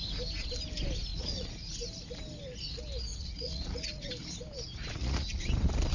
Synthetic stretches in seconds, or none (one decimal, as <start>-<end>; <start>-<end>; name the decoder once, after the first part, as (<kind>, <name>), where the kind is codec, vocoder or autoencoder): 1.1-1.9 (vocoder, Vocos); 3.1-4.1; 4.8-5.4